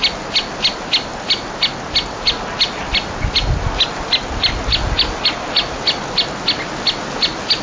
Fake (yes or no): no